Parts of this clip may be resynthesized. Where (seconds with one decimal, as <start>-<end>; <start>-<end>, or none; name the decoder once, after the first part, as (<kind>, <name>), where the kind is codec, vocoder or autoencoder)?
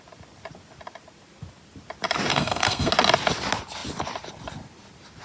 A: 2.3-2.9 (codec, SNAC)